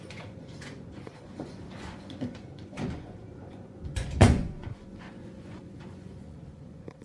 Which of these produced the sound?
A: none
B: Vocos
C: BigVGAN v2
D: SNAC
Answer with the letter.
B